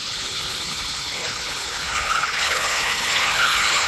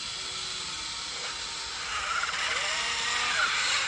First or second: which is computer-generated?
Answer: first